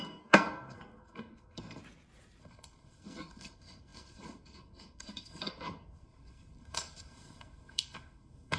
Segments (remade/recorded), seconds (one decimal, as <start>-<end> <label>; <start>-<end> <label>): 0.0-1.8 remade; 1.8-2.4 recorded; 2.4-8.6 remade